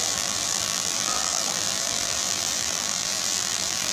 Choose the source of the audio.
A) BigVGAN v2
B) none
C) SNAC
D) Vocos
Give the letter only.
A